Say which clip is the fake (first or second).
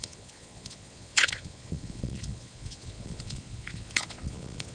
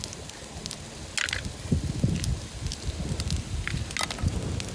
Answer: first